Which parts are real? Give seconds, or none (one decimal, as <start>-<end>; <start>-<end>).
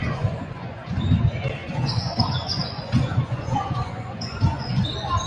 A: 1.1-1.6; 4.8-5.3